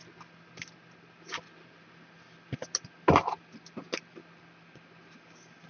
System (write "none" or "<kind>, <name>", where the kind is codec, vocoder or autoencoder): none